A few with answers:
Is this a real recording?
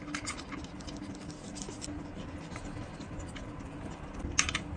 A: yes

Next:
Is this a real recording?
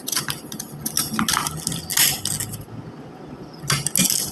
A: yes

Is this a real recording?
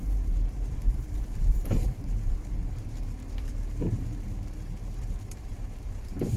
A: no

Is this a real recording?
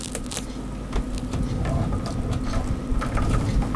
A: yes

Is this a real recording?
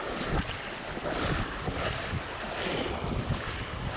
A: no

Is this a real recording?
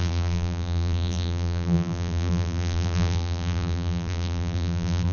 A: no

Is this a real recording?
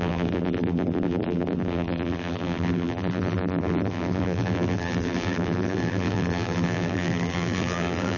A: no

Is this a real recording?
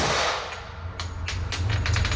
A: yes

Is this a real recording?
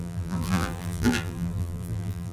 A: no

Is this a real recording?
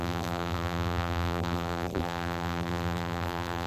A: no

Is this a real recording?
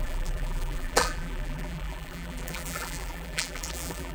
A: no